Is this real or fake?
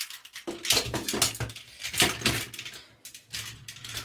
real